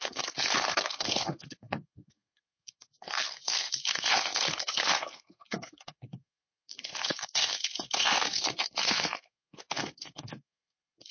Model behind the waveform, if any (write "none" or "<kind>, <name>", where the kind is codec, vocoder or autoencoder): codec, SNAC